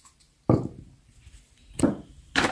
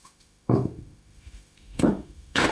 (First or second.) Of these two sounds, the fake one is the second